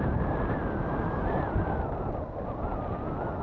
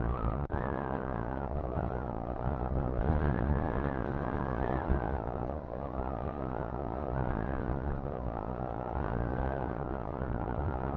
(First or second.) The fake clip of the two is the second